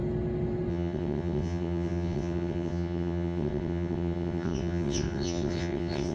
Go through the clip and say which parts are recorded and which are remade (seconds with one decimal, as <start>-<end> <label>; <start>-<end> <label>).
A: 0.0-0.7 recorded; 0.7-6.1 remade